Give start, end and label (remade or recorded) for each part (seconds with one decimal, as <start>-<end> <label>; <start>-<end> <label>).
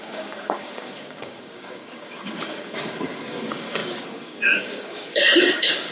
0.0-5.9 remade